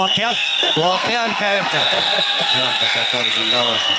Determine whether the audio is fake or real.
fake